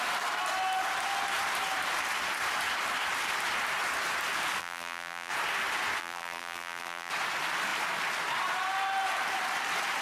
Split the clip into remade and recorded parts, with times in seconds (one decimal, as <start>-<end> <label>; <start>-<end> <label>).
0.0-4.6 recorded; 4.6-5.3 remade; 5.3-6.0 recorded; 6.0-7.1 remade; 7.1-10.0 recorded